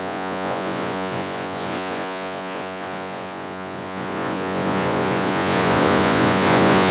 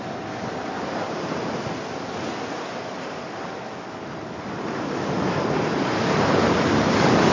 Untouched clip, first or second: second